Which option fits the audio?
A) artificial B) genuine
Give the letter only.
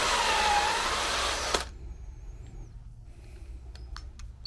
B